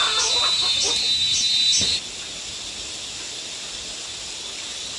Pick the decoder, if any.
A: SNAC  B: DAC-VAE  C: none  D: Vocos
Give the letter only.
C